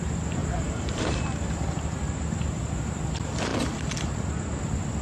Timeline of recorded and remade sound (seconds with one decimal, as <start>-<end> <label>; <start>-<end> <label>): 0.0-0.4 recorded; 0.4-1.2 remade; 1.2-5.0 recorded